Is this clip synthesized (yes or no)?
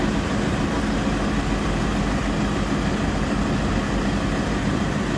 no